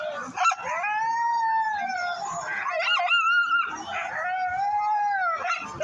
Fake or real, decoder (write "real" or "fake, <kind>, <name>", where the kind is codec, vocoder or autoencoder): real